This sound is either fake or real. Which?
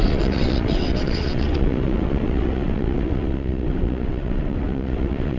fake